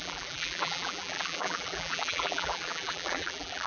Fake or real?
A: fake